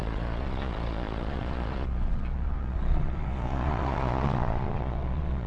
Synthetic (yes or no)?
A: yes